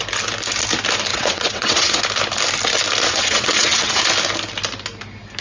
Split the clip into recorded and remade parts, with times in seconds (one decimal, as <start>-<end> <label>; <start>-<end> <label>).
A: 0.0-1.1 recorded; 1.1-2.0 remade; 2.0-3.1 recorded; 3.1-4.0 remade; 4.0-5.4 recorded